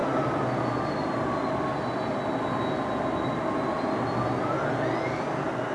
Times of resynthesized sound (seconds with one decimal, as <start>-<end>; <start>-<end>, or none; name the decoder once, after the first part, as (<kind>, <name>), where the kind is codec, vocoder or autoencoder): none